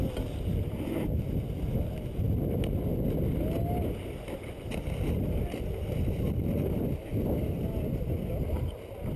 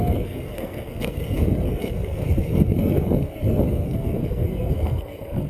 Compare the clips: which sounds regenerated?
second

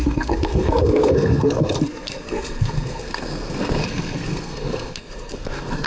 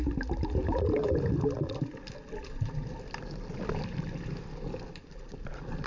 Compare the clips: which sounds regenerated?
first